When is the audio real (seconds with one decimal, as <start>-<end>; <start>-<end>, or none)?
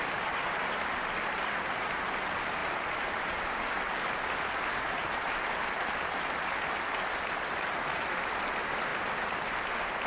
0.0-10.1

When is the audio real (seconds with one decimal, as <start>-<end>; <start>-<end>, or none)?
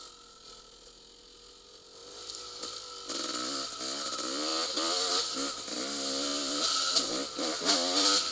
0.0-8.3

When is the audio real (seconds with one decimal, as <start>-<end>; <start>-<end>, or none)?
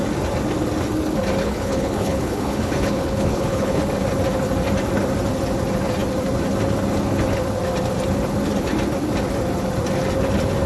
0.0-1.4; 3.8-10.7